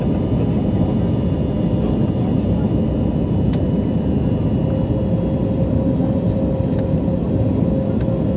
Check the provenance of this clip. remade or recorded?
recorded